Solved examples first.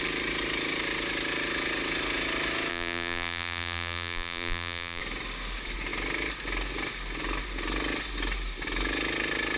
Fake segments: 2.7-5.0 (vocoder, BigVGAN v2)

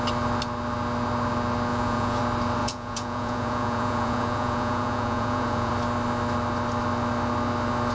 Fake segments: 1.7-2.2 (vocoder, Vocos); 2.6-5.7

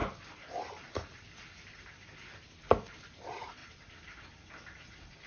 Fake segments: none

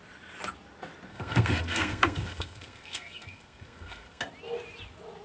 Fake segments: 1.1-4.2 (codec, SNAC)

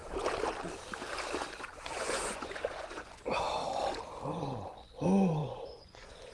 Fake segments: 1.6-3.6 (vocoder, Vocos); 4.4-6.3

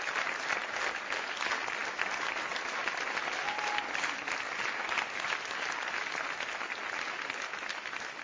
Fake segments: none

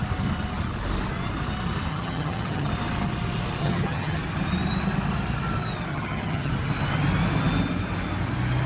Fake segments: 1.9-2.7 (vocoder, HiFi-GAN); 3.6-4.2; 5.9-6.5